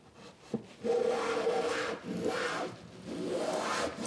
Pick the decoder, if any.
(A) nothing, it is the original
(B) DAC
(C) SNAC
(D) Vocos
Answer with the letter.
A